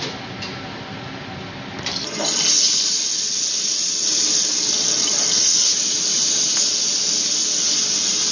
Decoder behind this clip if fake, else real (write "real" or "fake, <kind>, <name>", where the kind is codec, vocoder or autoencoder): real